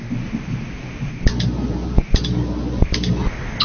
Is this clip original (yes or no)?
yes